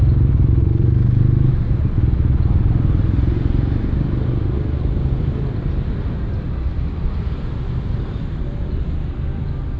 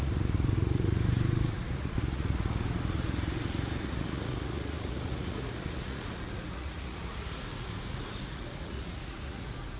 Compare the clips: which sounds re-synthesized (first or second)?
second